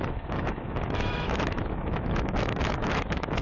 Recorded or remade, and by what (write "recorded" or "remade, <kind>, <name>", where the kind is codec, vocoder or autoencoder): remade, autoencoder, DAC-VAE